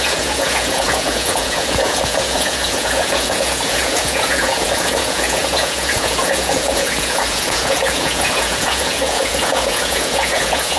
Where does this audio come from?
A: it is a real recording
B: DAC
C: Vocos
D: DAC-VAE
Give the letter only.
C